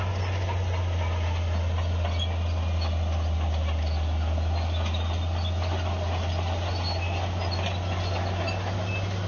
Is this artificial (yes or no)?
no